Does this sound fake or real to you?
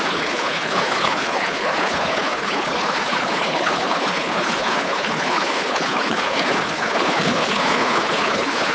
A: fake